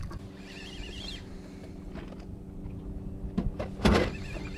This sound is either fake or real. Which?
real